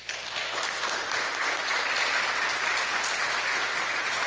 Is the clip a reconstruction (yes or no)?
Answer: no